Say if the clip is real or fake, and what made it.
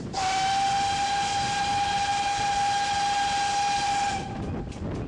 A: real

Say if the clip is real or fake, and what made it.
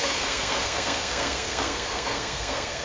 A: fake, codec, SNAC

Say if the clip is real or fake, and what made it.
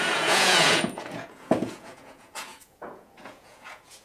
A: fake, vocoder, Vocos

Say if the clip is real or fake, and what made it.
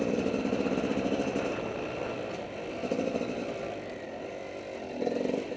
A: real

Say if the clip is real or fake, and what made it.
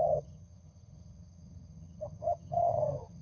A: fake, vocoder, HiFi-GAN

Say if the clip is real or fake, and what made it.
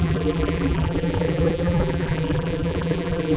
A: fake, vocoder, BigVGAN v2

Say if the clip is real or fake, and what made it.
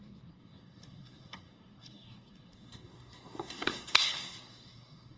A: fake, codec, SNAC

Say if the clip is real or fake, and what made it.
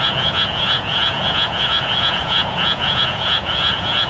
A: fake, vocoder, Vocos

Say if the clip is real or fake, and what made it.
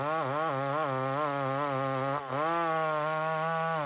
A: real